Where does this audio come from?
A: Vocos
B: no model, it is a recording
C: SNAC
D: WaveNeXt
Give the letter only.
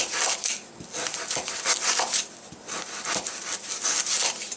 B